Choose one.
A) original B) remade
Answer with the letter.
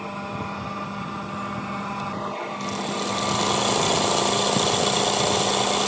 A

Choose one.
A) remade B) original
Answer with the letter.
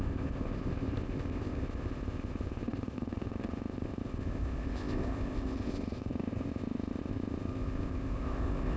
A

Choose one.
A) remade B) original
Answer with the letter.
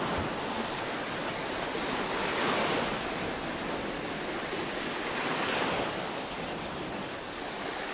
B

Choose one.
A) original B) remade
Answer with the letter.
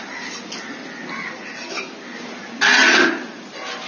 A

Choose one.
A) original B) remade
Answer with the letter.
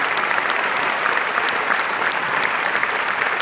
A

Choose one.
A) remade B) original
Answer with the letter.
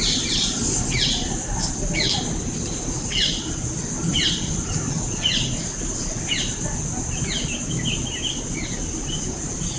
B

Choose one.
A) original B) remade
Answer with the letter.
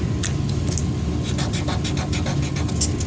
A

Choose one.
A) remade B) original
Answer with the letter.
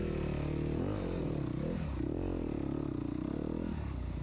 B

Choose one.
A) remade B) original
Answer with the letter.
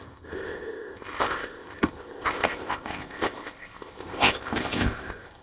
A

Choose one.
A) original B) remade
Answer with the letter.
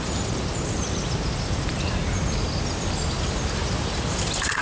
A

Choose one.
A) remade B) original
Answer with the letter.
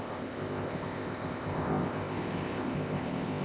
A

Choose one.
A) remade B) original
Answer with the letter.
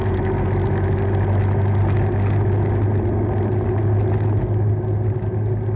B